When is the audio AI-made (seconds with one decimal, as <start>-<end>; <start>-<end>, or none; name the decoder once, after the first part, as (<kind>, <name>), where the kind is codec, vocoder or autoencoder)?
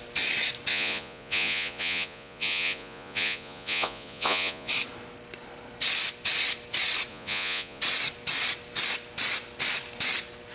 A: 0.7-4.7 (vocoder, Vocos); 7.1-7.8